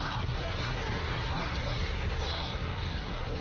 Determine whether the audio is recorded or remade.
remade